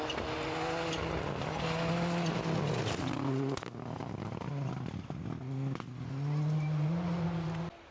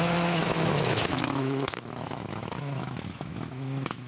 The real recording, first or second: first